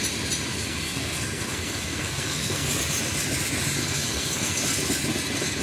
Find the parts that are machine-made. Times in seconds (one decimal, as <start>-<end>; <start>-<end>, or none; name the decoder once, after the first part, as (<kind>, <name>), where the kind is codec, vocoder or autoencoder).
0.5-2.7 (codec, SNAC); 3.8-4.6

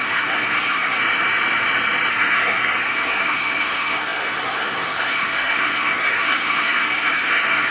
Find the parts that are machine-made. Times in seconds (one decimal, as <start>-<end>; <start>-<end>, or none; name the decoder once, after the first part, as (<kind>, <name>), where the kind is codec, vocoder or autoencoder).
0.0-1.0 (codec, SNAC); 2.1-7.7

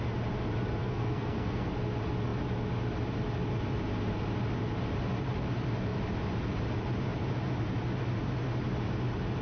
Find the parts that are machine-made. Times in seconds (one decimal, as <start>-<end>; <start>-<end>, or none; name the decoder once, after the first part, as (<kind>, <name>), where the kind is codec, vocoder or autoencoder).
0.8-1.7 (codec, SNAC)

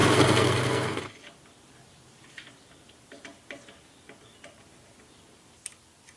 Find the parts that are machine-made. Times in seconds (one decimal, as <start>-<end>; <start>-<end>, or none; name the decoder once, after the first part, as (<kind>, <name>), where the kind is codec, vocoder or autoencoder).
0.0-1.0 (codec, SNAC)

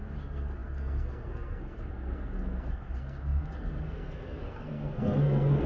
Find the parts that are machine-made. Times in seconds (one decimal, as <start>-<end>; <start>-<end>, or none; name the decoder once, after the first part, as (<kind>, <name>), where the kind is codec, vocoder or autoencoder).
0.0-5.7 (codec, SNAC)

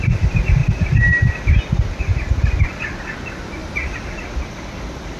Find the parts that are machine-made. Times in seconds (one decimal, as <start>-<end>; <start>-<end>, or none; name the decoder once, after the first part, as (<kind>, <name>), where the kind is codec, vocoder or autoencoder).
none

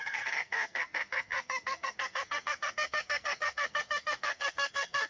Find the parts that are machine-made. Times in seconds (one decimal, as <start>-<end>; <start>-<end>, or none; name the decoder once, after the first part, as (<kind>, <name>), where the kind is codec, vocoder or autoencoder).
0.0-5.1 (codec, SNAC)